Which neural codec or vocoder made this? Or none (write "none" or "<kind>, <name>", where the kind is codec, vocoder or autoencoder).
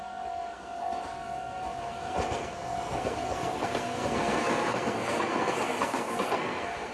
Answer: codec, SNAC